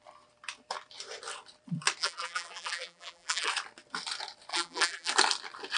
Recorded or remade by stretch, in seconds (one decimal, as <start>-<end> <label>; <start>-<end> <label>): 0.0-2.0 recorded; 2.0-3.5 remade; 3.5-4.5 recorded; 4.5-5.1 remade; 5.1-5.8 recorded